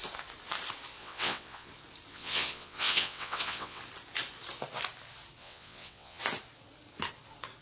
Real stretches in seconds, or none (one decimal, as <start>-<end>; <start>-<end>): 0.0-1.0; 1.7-2.1; 3.8-5.4; 6.2-7.6